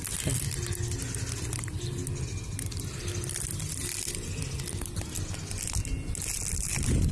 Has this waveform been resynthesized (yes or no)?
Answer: no